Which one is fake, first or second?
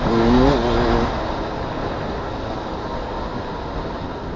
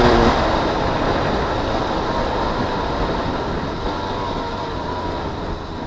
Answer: second